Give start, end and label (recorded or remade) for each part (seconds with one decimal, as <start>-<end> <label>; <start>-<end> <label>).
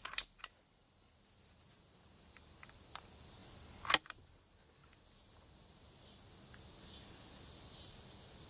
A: 0.0-8.5 recorded